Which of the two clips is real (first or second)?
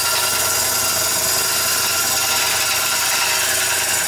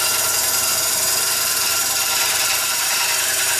first